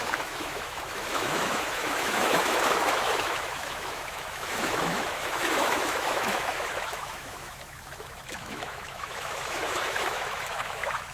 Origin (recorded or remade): remade